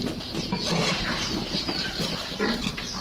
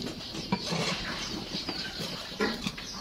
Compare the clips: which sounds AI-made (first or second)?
second